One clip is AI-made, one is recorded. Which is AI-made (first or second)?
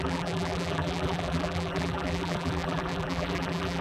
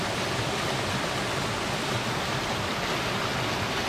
first